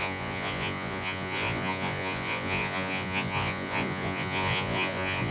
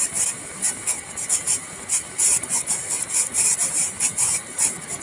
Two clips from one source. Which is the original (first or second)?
second